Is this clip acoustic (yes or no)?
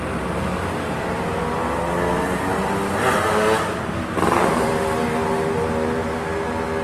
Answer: yes